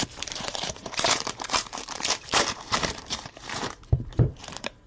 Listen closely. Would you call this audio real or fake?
fake